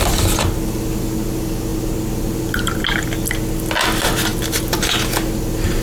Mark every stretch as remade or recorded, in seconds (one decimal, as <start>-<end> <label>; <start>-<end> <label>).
0.0-5.8 recorded